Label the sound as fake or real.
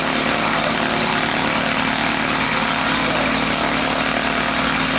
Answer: real